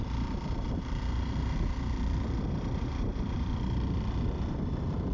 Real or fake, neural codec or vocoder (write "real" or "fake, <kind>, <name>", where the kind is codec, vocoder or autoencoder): fake, vocoder, BigVGAN v2